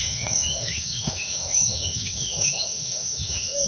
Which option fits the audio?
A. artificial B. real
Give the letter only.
A